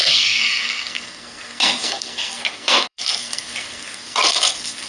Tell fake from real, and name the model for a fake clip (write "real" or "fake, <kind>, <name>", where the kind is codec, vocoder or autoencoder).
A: fake, codec, SNAC